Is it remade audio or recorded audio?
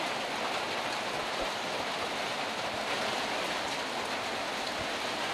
recorded